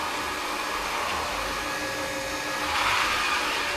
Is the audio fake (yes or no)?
no